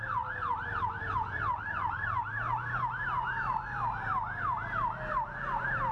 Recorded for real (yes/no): yes